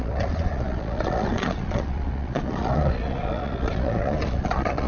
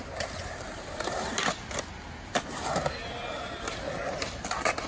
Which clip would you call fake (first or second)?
first